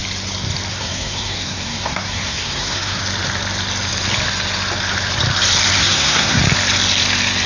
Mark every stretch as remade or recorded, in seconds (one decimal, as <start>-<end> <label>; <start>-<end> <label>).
0.0-0.7 recorded; 0.7-3.0 remade; 3.0-5.8 recorded; 5.8-6.4 remade; 6.4-7.5 recorded